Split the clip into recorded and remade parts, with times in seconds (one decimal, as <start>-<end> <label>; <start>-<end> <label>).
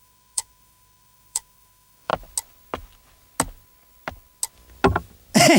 0.0-2.1 remade; 2.1-5.6 recorded